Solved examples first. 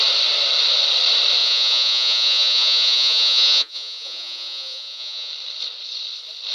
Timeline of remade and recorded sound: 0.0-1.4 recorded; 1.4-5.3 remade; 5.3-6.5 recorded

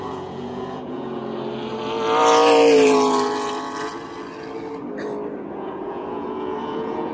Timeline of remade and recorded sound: 0.0-1.2 remade; 1.2-5.5 recorded; 5.5-7.1 remade

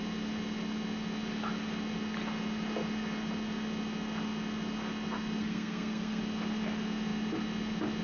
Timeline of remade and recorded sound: 0.0-5.4 recorded; 5.4-6.2 remade; 6.2-8.0 recorded

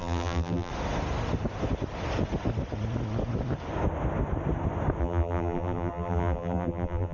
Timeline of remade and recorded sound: 0.0-0.7 remade; 0.7-5.0 recorded; 5.0-7.1 remade

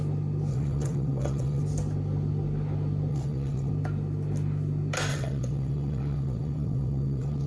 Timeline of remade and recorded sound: 0.0-0.5 recorded; 0.5-1.6 remade; 1.6-3.1 recorded; 3.1-3.7 remade; 3.7-5.1 recorded; 5.1-7.5 remade

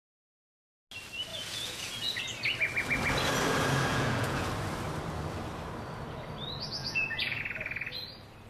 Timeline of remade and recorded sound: 0.0-1.3 recorded; 1.3-2.2 remade; 2.2-3.9 recorded; 3.9-4.5 remade; 4.5-6.8 recorded; 6.8-7.4 remade; 7.4-8.5 recorded

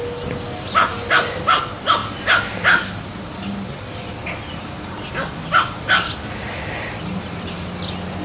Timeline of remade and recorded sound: 0.0-8.2 recorded

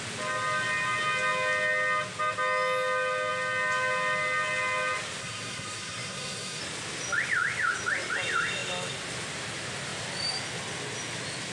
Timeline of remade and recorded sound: 0.0-5.2 recorded; 5.2-6.6 remade; 6.6-11.5 recorded